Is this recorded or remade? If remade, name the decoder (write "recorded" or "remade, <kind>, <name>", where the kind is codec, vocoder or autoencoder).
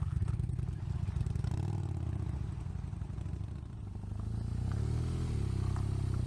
recorded